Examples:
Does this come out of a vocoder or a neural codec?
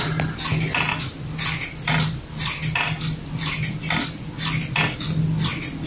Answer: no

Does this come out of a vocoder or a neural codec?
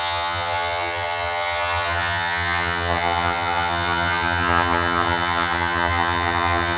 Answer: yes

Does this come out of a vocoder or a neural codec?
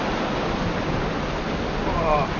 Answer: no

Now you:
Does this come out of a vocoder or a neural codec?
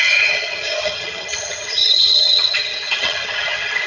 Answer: yes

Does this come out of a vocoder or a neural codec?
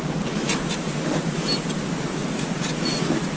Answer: no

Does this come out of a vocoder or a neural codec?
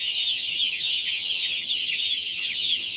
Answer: yes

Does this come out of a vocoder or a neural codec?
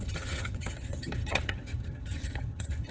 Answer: yes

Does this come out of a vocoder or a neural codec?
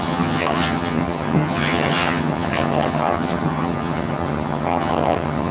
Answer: yes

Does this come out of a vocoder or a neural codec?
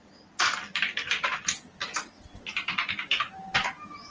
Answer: no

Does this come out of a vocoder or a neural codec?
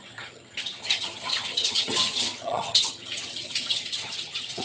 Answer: yes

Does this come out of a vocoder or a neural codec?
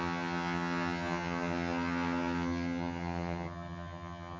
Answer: yes